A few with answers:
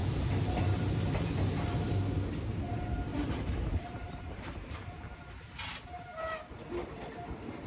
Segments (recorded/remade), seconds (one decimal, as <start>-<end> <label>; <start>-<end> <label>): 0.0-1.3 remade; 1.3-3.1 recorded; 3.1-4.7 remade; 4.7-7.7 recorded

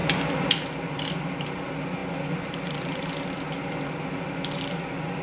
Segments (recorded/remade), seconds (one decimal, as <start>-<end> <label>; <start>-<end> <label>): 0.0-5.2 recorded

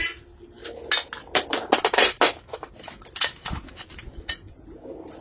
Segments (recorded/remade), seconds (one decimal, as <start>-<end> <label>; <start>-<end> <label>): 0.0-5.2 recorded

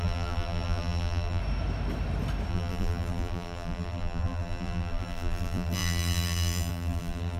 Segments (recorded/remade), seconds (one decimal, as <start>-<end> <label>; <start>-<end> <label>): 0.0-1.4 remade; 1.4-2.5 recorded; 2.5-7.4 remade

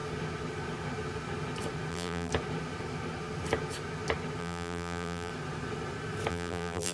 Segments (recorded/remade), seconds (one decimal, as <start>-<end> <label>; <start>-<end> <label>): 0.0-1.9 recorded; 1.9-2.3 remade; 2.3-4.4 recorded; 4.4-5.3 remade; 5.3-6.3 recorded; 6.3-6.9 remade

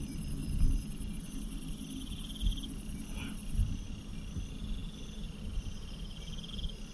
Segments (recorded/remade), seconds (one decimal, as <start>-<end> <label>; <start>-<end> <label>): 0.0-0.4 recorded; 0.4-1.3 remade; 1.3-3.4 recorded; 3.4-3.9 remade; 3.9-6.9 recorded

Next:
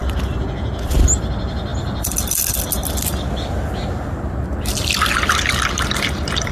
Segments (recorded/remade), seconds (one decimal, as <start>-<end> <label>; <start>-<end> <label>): 0.0-6.5 recorded